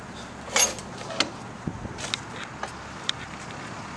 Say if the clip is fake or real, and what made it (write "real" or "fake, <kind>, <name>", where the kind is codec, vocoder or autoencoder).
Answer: real